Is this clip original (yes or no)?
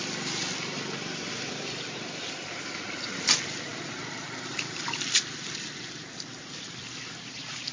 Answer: yes